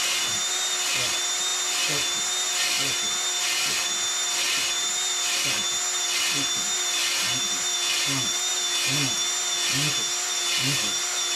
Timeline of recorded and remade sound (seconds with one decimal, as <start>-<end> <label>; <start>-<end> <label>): 0.0-11.4 recorded